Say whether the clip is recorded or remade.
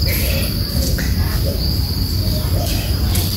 recorded